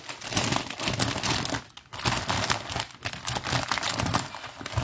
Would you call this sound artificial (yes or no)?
no